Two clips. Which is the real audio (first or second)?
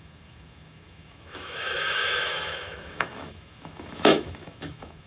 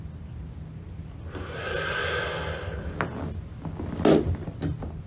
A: second